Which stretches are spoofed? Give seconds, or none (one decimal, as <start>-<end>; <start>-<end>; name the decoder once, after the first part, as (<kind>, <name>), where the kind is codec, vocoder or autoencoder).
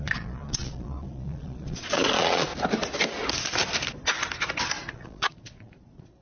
0.0-2.5 (vocoder, Vocos); 4.9-6.2